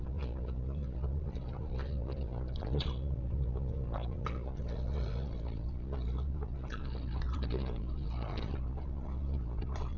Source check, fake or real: fake